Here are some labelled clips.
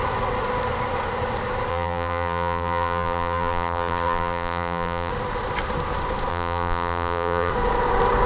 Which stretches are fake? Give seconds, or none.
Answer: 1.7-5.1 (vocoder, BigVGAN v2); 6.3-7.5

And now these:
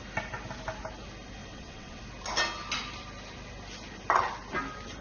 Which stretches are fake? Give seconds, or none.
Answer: 1.4-2.0 (vocoder, WaveNeXt)

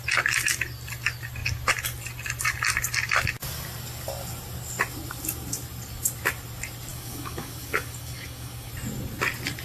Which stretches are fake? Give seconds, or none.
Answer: 6.9-8.7 (codec, DAC)

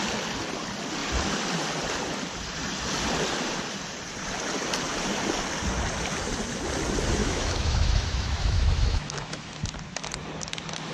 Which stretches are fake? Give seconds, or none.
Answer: 7.2-9.6 (autoencoder, DAC-VAE)

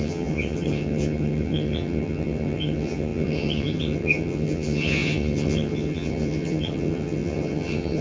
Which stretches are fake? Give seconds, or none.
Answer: 0.0-8.0 (vocoder, HiFi-GAN)

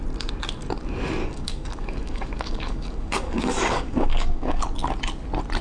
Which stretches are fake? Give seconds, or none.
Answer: 1.2-4.6 (codec, DAC)